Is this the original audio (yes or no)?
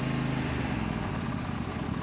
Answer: yes